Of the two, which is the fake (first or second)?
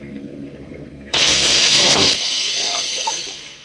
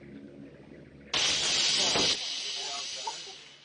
first